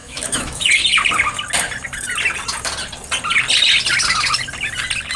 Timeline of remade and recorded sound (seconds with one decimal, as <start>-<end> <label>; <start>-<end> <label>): 0.0-0.7 remade; 0.7-5.2 recorded